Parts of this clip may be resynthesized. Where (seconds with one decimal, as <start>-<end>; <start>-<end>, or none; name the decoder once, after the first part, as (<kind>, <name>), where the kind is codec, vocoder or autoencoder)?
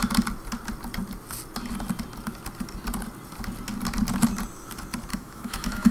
5.1-5.9 (autoencoder, DAC-VAE)